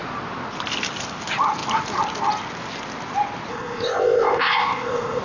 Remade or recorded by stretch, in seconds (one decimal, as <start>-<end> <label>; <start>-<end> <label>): 0.0-3.5 recorded; 3.5-5.2 remade